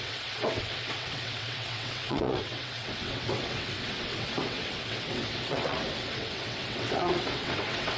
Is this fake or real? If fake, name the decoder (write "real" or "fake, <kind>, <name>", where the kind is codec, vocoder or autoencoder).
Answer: fake, vocoder, WaveNeXt